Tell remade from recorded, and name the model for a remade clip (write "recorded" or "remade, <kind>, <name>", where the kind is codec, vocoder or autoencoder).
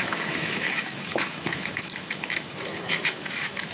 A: remade, autoencoder, DAC-VAE